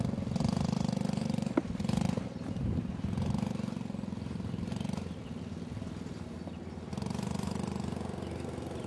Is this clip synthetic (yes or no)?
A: no